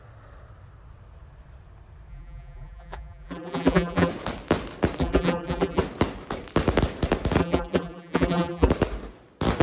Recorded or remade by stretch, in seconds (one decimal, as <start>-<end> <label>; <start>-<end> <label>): 0.0-2.1 recorded; 2.1-4.1 remade; 4.1-5.0 recorded; 5.0-5.8 remade; 5.8-7.4 recorded; 7.4-8.7 remade; 8.7-9.6 recorded